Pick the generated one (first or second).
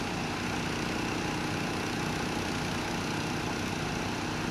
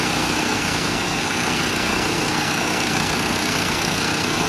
second